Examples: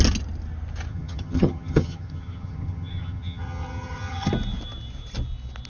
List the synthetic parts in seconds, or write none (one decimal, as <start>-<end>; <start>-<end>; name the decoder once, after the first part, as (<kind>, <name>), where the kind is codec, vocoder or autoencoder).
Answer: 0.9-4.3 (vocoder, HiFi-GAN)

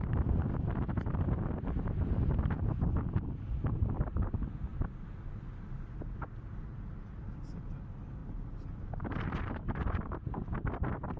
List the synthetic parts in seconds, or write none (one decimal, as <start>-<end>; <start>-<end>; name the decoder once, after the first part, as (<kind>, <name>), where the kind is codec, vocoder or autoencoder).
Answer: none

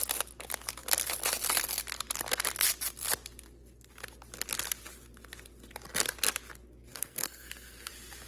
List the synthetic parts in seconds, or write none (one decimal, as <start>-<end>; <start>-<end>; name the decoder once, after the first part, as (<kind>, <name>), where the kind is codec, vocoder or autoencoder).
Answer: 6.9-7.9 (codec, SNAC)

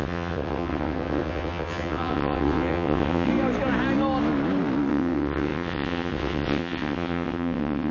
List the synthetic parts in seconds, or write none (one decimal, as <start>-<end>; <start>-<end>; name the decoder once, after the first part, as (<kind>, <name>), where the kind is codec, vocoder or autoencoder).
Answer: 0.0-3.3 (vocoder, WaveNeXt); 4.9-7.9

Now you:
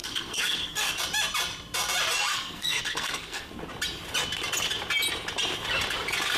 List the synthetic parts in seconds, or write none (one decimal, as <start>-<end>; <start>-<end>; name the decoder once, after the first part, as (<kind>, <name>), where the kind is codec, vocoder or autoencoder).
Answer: 0.0-1.0 (codec, SNAC); 2.3-3.5

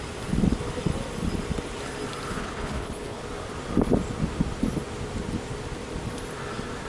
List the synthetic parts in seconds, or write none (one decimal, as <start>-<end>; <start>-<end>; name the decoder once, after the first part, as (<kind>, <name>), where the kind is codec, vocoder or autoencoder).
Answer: 2.3-3.2 (codec, HILCodec)